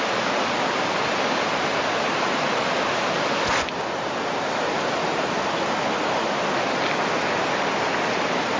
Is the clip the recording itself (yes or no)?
yes